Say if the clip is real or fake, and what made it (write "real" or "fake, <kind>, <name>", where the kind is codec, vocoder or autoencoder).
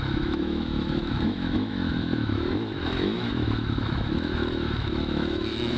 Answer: fake, autoencoder, DAC-VAE